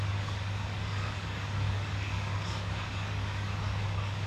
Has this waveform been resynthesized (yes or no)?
yes